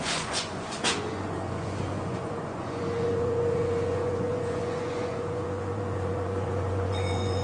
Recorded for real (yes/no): no